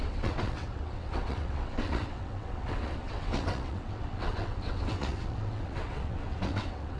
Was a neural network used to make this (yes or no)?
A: yes